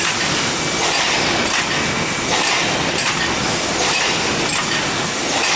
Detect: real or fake real